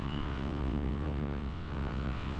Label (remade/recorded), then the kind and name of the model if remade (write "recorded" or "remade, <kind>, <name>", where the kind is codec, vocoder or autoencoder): remade, vocoder, WaveNeXt